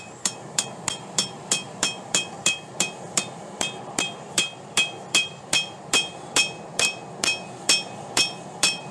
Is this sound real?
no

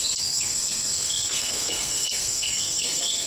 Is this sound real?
no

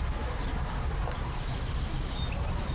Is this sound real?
yes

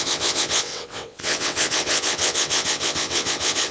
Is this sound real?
no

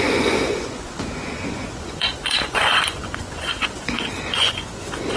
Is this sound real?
no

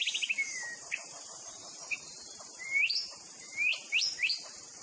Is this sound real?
yes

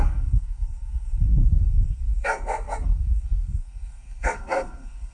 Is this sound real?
no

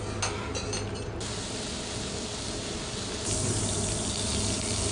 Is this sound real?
yes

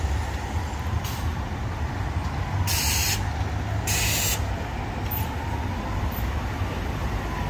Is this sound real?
yes